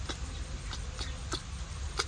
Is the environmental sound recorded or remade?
recorded